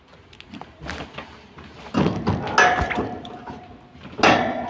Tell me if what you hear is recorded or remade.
recorded